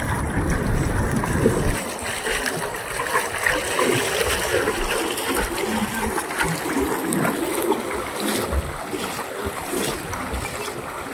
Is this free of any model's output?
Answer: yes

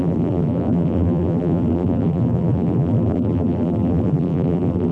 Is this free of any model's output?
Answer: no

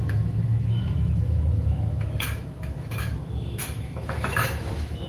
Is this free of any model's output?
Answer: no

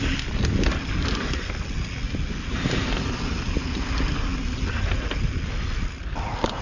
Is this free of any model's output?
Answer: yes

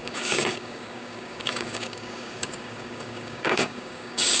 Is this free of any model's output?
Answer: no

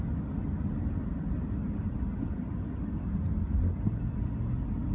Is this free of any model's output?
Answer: yes